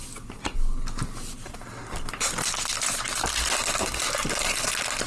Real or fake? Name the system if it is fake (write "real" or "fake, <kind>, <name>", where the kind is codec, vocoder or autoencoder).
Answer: real